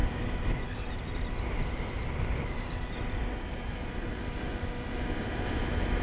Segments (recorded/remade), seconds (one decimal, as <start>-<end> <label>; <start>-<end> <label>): 0.0-6.0 recorded